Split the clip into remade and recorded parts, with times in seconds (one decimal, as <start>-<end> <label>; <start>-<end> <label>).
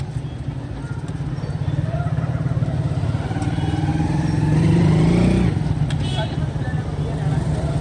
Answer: 0.0-7.8 recorded